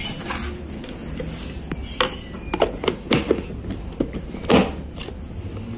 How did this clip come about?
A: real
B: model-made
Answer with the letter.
A